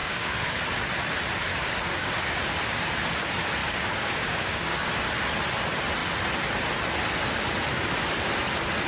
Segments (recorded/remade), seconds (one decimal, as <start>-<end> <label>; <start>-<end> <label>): 0.0-0.6 remade; 0.6-1.5 recorded; 1.5-2.4 remade; 2.4-3.6 recorded; 3.6-4.9 remade; 4.9-8.9 recorded